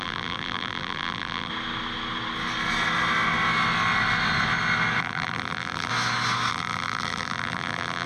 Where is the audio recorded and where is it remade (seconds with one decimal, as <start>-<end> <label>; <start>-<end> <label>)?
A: 0.0-1.5 remade; 1.5-5.0 recorded; 5.0-5.9 remade; 5.9-6.5 recorded; 6.5-8.1 remade